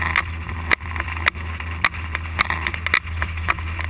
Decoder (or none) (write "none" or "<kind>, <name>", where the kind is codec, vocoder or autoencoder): none